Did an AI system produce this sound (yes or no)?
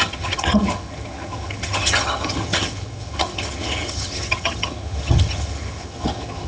yes